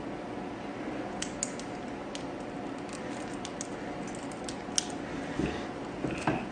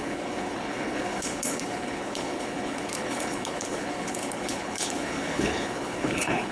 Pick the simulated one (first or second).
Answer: second